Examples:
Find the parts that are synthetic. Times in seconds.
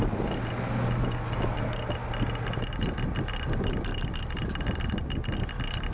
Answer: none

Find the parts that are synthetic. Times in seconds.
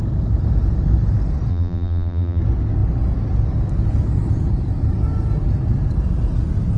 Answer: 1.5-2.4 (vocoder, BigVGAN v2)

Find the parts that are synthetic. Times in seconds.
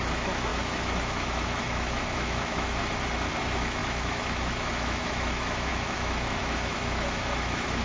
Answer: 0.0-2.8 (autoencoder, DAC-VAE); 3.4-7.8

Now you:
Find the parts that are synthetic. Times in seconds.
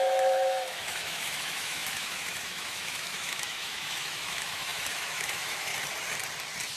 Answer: 0.0-5.7 (autoencoder, DAC-VAE)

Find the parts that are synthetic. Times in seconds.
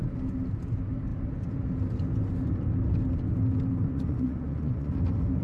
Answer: 3.8-4.9 (vocoder, Vocos)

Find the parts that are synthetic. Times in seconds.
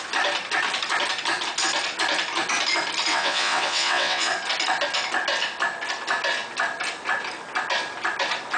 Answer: 3.1-4.3 (vocoder, WaveNeXt)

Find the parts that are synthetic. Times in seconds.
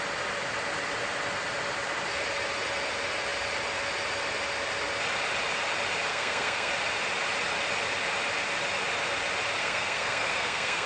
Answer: 6.1-6.7 (codec, SNAC); 9.6-10.9